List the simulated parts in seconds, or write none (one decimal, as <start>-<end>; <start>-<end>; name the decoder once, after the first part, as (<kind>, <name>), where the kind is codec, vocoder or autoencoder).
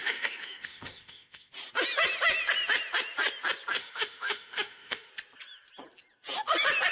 0.0-1.5 (autoencoder, DAC-VAE); 3.8-5.1